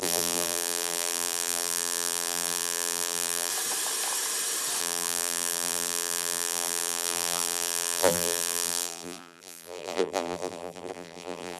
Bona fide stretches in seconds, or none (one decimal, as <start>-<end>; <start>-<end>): 3.5-4.8

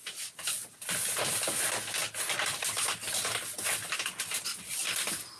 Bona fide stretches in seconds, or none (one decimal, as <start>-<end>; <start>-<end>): 0.0-5.4

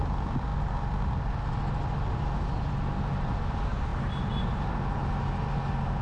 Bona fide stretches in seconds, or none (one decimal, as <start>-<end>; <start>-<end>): 0.0-0.5; 1.1-6.0

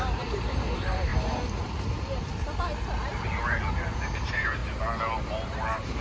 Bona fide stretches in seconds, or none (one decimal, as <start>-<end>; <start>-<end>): 1.1-3.7; 4.6-5.2

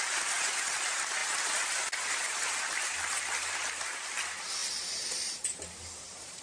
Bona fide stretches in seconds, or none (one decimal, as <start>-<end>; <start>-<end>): 0.0-6.4

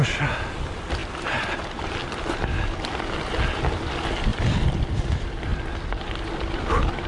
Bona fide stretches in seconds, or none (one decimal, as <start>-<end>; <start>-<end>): 0.0-1.0; 2.8-4.3; 4.9-7.1

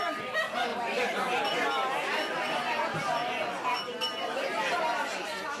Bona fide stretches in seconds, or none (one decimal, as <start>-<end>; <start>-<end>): 0.0-0.7; 1.9-5.6

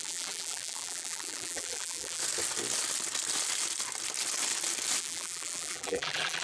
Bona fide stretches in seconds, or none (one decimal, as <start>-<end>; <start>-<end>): 2.2-5.0